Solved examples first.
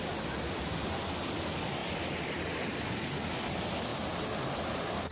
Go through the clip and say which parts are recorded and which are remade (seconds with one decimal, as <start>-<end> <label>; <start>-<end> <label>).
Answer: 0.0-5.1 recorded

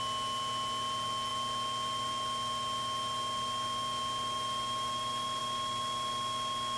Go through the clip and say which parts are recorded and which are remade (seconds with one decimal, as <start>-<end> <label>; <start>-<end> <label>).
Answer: 0.0-6.8 recorded

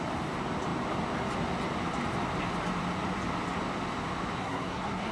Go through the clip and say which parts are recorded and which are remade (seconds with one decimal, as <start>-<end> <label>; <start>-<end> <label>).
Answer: 0.0-4.4 recorded; 4.4-5.1 remade

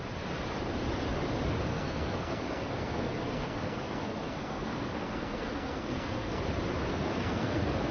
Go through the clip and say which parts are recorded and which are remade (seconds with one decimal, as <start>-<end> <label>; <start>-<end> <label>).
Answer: 0.0-1.7 recorded; 1.7-6.4 remade; 6.4-6.9 recorded; 6.9-7.9 remade

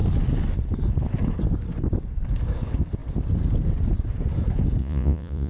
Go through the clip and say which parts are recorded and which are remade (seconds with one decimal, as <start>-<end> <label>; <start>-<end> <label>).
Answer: 0.0-4.8 recorded; 4.8-5.5 remade

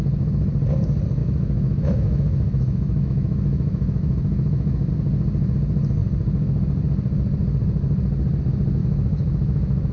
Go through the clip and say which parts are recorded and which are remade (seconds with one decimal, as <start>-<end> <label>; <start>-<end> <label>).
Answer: 0.0-1.2 recorded; 1.2-4.9 remade; 4.9-8.8 recorded; 8.8-9.9 remade

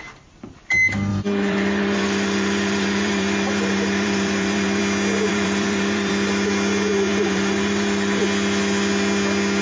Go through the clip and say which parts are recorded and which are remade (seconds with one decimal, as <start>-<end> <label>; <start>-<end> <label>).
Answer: 0.0-1.1 recorded; 1.1-4.8 remade; 4.8-5.3 recorded; 5.3-6.1 remade; 6.1-7.1 recorded; 7.1-8.2 remade; 8.2-9.6 recorded

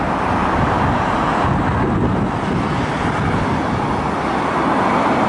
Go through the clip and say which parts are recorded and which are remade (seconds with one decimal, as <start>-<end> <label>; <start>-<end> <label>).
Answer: 0.0-5.3 recorded